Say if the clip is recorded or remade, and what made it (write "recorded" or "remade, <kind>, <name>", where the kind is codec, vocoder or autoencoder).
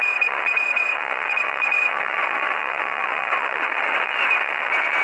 remade, vocoder, WaveNeXt